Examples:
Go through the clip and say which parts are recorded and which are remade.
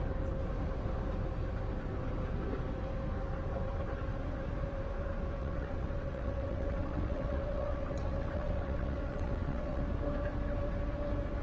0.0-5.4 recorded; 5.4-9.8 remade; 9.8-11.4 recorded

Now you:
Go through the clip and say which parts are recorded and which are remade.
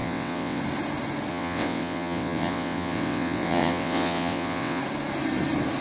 0.0-0.6 remade; 0.6-1.3 recorded; 1.3-4.8 remade; 4.8-5.8 recorded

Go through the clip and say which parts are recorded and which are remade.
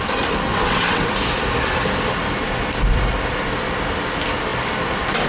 0.0-0.5 recorded; 0.5-1.1 remade; 1.1-5.3 recorded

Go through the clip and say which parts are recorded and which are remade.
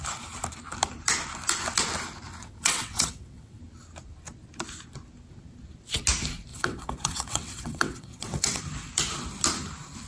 0.0-2.4 recorded; 2.4-3.6 remade; 3.6-6.5 recorded; 6.5-8.6 remade; 8.6-10.1 recorded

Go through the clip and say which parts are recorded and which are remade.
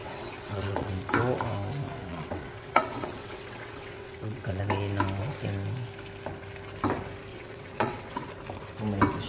0.0-0.9 remade; 0.9-2.1 recorded; 2.1-4.6 remade; 4.6-7.3 recorded; 7.3-8.3 remade; 8.3-9.3 recorded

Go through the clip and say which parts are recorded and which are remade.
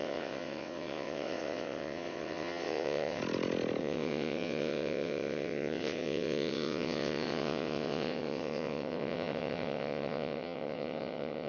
0.0-3.2 remade; 3.2-3.8 recorded; 3.8-11.5 remade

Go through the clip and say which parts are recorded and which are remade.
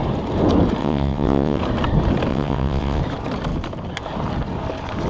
0.0-0.8 recorded; 0.8-1.6 remade; 1.6-2.3 recorded; 2.3-3.0 remade; 3.0-5.1 recorded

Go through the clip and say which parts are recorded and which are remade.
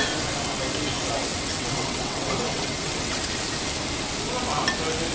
0.0-1.3 recorded; 1.3-3.2 remade; 3.2-5.1 recorded